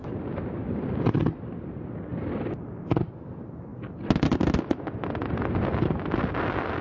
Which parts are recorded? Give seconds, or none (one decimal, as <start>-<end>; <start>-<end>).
0.0-6.8